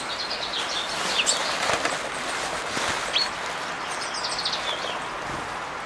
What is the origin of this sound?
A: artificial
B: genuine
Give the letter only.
B